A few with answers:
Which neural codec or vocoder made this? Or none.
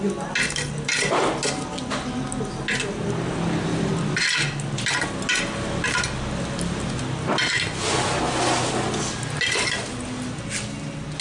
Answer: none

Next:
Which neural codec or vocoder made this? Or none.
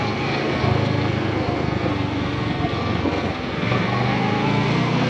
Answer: codec, SNAC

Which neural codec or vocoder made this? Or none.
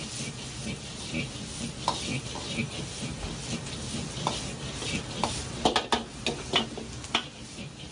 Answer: none